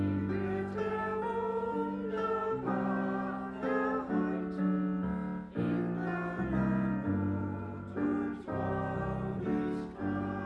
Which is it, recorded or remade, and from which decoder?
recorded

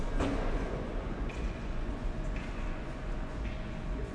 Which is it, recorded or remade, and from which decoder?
remade, vocoder, Vocos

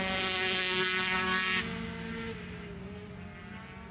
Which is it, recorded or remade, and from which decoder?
recorded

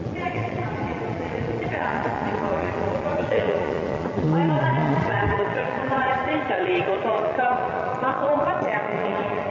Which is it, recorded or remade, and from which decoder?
remade, vocoder, Vocos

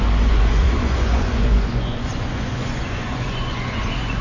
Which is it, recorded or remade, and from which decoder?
remade, vocoder, Vocos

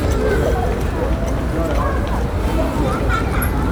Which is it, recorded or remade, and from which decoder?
recorded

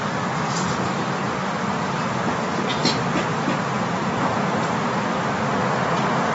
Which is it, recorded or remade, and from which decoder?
recorded